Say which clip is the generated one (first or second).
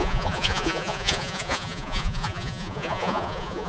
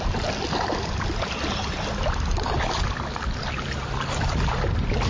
first